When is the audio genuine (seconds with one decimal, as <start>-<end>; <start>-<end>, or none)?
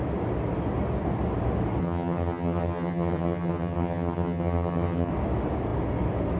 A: 0.0-1.8; 5.1-6.4